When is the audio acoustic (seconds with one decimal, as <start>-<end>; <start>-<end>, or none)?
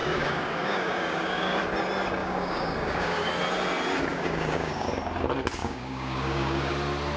1.6-2.2; 3.3-4.1; 4.9-5.6; 6.7-7.2